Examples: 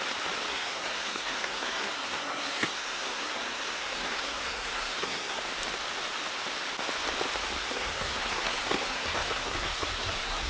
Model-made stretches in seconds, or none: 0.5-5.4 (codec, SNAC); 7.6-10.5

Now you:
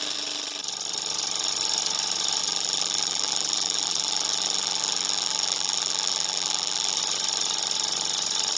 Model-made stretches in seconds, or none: 2.4-7.0 (vocoder, BigVGAN v2)

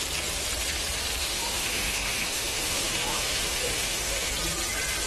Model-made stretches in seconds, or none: 1.2-4.3 (autoencoder, DAC-VAE)

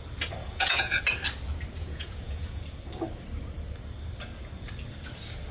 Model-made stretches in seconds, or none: 0.4-1.0 (vocoder, Vocos); 1.8-2.6

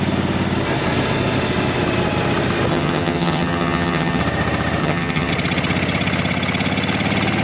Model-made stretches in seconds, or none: 2.7-4.2 (vocoder, HiFi-GAN); 4.8-5.3